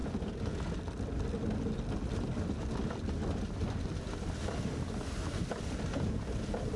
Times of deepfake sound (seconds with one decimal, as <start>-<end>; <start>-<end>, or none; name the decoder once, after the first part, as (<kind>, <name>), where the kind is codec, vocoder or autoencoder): none